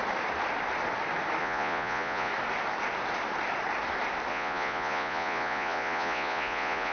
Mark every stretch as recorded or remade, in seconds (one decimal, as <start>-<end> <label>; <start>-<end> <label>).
0.0-1.4 recorded; 1.4-2.3 remade; 2.3-4.3 recorded; 4.3-6.9 remade